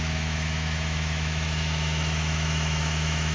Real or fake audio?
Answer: fake